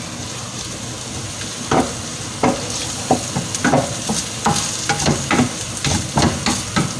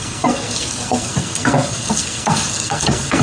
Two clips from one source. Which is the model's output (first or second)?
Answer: second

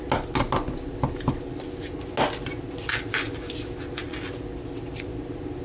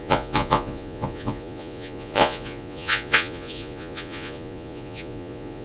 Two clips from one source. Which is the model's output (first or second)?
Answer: second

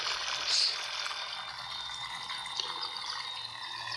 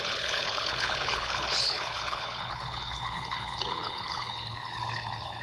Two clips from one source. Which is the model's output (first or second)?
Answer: second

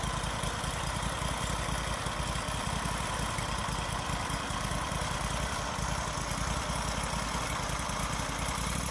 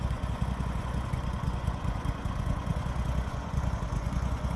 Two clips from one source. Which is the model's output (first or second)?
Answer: second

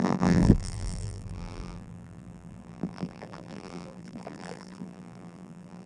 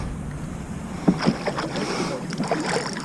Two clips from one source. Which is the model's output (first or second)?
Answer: first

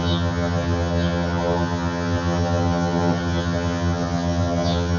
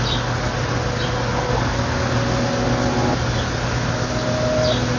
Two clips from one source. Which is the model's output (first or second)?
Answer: first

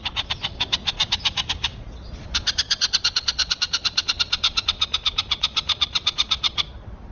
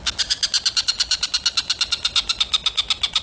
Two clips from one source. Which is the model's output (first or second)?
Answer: first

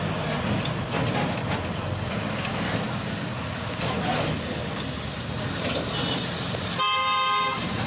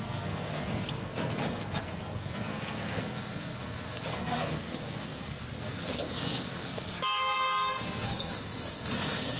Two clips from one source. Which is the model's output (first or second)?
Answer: second